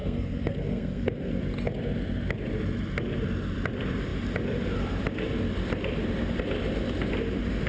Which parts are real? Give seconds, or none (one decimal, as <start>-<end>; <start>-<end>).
1.4-7.7